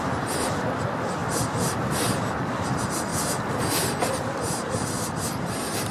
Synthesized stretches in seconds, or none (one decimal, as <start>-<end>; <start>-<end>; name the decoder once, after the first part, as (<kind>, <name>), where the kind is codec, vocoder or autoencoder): 1.2-1.9 (vocoder, BigVGAN v2)